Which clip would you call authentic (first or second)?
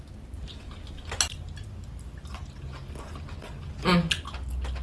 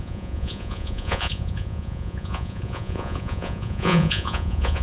first